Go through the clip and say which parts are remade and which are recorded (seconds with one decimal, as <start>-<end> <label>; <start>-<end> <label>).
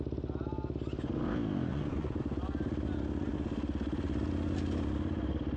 0.0-1.7 recorded; 1.7-2.2 remade; 2.2-5.6 recorded